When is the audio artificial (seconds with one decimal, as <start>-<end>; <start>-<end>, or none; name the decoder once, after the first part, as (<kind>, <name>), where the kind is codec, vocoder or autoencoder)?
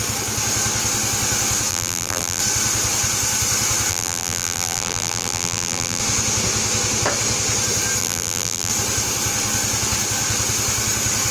1.7-2.4 (vocoder, BigVGAN v2); 3.9-6.0; 8.0-8.7